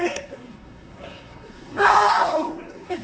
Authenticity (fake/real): fake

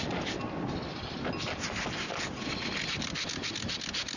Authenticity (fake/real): real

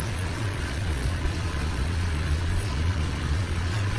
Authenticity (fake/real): fake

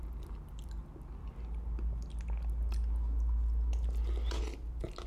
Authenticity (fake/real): real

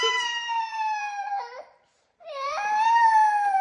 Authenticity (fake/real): fake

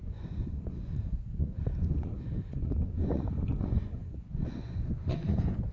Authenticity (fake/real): fake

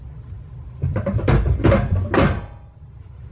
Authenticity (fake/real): real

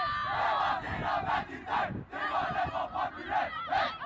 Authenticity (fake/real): real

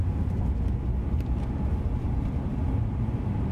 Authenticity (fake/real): real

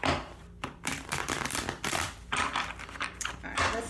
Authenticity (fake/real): fake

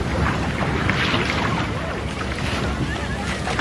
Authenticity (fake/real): real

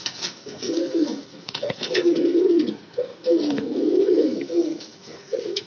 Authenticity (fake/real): fake